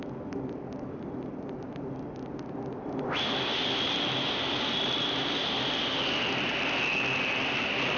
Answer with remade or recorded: recorded